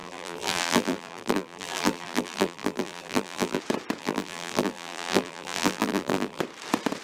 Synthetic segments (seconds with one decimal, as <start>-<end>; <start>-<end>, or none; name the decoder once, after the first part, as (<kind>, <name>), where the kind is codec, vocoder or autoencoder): 0.0-3.6 (vocoder, BigVGAN v2); 4.0-6.4